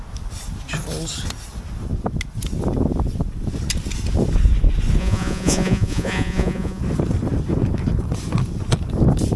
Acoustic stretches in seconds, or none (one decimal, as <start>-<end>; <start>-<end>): 0.0-5.0; 6.8-9.4